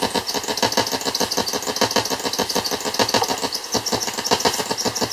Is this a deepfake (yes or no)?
no